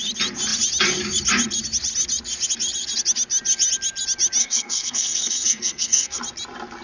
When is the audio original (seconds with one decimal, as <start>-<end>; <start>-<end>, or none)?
0.0-4.4; 6.2-6.8